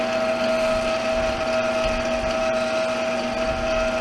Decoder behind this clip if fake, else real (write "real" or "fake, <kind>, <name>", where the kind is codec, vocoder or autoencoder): real